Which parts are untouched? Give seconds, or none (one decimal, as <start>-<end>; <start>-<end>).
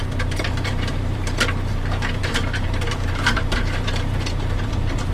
1.2-1.7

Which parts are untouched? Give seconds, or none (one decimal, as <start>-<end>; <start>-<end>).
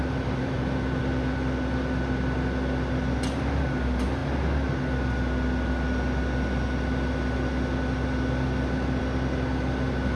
1.0-10.2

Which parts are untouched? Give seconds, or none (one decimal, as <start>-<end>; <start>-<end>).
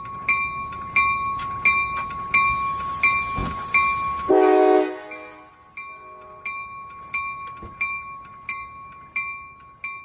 0.0-10.0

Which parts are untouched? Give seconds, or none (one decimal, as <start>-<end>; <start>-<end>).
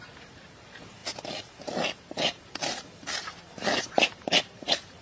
none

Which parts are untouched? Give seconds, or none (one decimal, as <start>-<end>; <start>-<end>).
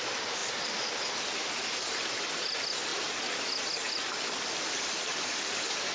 0.0-5.9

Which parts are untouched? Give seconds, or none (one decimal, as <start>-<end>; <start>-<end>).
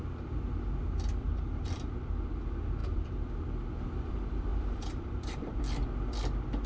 0.0-1.2; 2.1-2.8; 3.3-4.5; 5.6-6.7